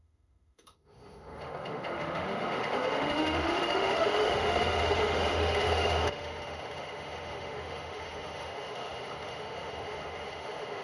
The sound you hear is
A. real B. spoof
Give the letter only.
B